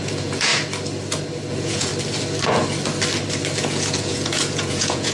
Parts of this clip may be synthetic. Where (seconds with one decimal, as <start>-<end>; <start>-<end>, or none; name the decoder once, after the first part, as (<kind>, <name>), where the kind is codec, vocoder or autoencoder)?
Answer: 0.0-0.5 (vocoder, Vocos); 1.5-1.9; 3.6-5.1